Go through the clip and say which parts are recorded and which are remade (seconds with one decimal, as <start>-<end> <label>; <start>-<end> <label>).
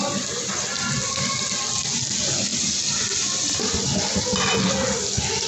0.0-5.5 recorded